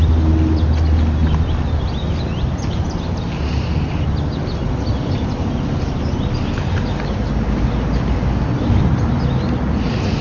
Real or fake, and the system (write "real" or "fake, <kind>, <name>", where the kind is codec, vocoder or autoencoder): real